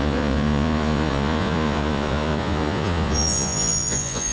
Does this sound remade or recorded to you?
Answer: remade